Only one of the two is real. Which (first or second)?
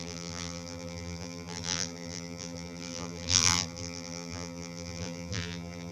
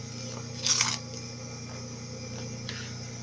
second